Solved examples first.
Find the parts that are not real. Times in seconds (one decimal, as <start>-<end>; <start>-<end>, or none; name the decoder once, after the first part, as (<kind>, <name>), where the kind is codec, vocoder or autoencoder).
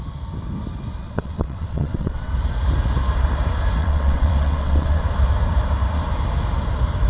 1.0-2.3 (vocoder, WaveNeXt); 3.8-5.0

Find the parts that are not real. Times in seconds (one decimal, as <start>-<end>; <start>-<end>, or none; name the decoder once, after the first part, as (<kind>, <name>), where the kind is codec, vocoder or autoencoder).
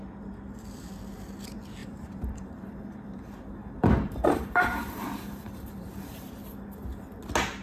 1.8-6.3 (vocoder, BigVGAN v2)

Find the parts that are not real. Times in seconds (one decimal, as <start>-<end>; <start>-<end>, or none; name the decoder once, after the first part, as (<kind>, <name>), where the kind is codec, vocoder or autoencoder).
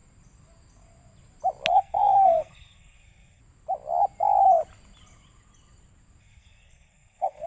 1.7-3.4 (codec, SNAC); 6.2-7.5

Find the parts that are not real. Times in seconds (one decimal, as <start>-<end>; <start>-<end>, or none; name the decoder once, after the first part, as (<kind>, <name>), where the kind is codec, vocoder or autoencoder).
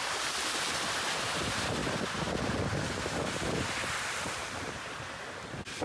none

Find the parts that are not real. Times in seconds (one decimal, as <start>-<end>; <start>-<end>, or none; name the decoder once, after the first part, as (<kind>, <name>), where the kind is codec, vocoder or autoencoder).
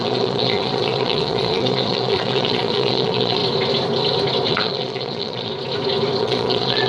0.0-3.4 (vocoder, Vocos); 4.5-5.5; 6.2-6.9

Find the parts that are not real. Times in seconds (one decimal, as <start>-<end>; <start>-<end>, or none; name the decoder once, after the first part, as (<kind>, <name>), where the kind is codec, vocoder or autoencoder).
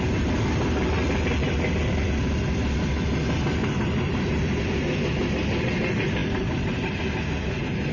none